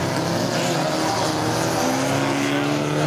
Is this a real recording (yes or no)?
yes